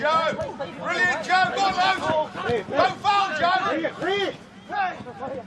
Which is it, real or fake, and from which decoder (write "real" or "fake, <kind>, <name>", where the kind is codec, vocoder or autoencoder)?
real